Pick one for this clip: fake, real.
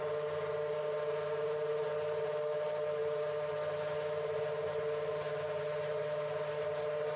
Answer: real